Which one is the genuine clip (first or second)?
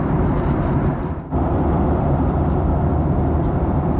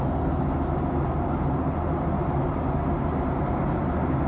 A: second